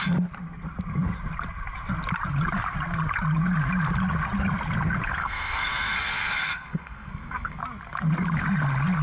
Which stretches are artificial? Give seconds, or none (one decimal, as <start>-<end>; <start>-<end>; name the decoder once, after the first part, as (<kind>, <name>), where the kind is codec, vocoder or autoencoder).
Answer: 5.2-7.6 (codec, SNAC)